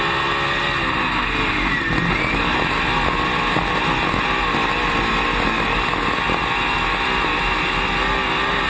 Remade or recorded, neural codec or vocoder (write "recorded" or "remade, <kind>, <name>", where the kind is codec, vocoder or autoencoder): recorded